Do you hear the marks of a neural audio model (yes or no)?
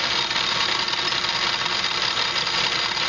no